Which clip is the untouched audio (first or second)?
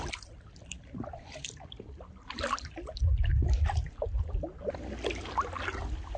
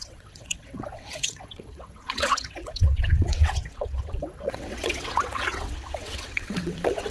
first